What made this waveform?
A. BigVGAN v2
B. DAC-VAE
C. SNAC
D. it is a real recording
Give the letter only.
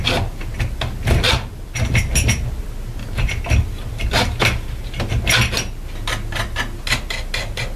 D